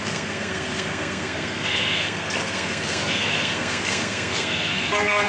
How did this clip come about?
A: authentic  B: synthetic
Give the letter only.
B